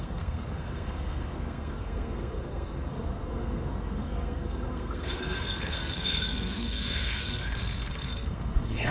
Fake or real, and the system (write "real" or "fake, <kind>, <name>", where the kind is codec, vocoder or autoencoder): fake, codec, SNAC